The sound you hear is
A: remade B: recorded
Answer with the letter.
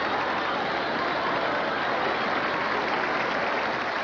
B